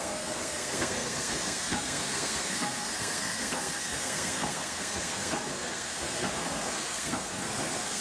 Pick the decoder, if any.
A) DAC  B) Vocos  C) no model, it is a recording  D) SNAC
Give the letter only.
D